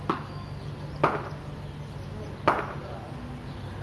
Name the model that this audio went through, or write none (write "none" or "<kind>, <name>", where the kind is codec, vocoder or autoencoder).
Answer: none